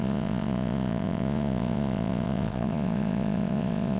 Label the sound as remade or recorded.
remade